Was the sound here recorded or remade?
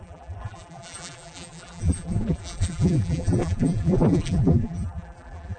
remade